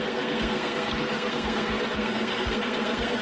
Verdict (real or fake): fake